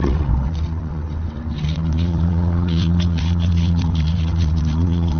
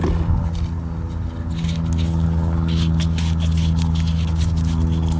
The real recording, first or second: second